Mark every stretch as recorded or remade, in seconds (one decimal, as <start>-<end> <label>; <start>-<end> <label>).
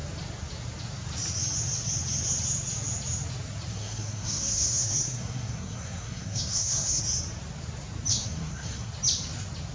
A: 0.0-3.7 recorded; 3.7-7.0 remade; 7.0-8.1 recorded; 8.1-8.9 remade; 8.9-9.7 recorded